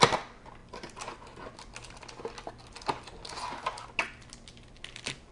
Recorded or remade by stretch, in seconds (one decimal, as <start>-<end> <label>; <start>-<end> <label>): 0.0-5.3 recorded